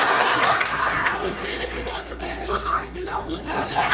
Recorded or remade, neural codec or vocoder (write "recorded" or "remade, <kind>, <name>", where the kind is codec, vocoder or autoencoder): remade, codec, SNAC